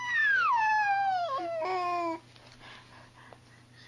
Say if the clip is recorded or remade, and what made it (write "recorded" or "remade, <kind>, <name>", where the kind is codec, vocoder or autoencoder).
recorded